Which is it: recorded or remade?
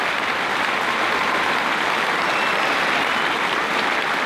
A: recorded